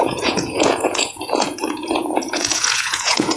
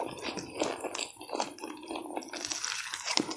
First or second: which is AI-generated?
first